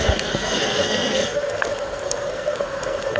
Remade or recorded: remade